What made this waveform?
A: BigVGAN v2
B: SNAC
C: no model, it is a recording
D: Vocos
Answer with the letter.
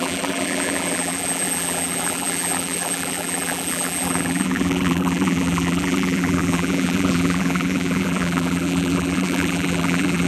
A